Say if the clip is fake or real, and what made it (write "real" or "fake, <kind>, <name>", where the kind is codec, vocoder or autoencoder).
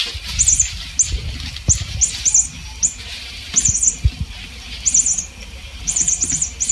real